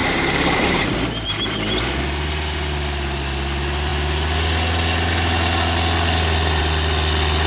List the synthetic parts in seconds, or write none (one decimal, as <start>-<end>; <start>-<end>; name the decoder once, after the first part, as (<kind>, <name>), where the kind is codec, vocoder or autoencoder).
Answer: 0.0-0.8 (vocoder, BigVGAN v2)